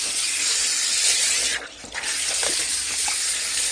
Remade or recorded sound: recorded